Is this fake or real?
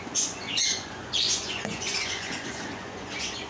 fake